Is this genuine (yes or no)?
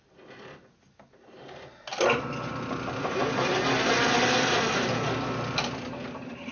yes